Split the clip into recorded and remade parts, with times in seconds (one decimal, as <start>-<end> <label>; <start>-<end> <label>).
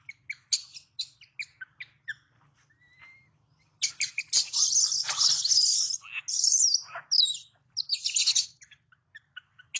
0.0-9.8 recorded